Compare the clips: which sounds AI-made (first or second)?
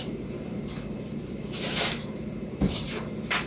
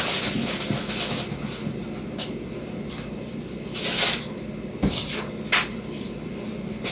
first